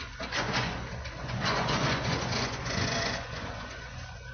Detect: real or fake fake